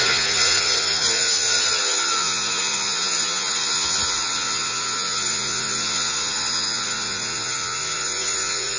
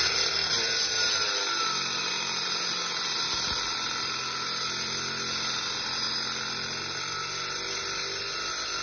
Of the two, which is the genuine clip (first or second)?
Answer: second